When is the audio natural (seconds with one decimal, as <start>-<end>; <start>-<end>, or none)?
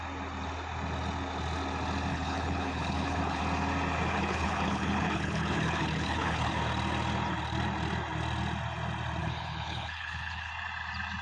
0.0-2.1; 3.4-4.1; 6.6-9.2; 10.5-11.2